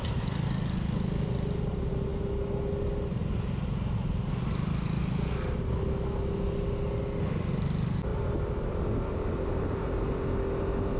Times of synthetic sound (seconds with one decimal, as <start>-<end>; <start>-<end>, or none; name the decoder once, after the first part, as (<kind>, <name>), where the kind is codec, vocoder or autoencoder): none